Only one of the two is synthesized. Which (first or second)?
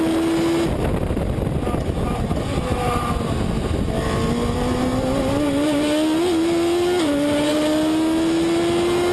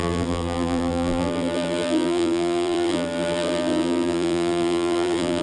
second